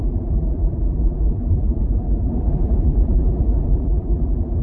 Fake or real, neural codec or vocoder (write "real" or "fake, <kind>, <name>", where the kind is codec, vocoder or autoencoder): fake, vocoder, BigVGAN v2